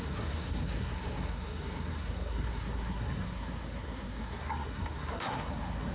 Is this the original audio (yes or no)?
no